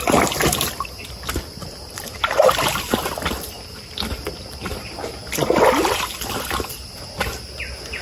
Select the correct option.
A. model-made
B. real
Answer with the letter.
B